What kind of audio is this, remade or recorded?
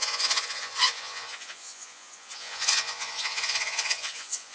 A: remade